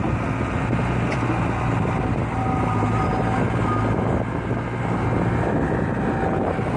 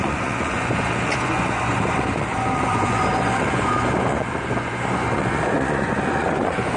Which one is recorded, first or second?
first